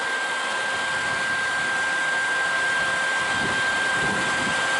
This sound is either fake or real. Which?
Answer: real